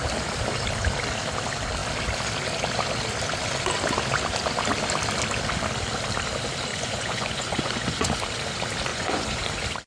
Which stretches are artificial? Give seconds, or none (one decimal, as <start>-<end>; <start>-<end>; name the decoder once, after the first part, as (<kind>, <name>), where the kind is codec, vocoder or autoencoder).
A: 6.7-8.2 (vocoder, Vocos); 8.9-9.4